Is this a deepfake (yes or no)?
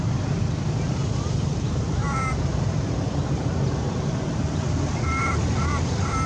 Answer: yes